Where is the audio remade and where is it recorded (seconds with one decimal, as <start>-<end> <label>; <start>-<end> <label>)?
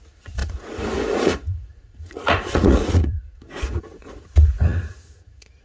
0.0-5.6 remade